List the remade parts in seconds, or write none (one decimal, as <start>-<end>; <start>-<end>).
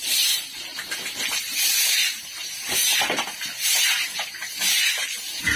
0.0-5.6